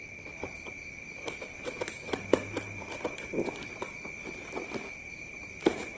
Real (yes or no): yes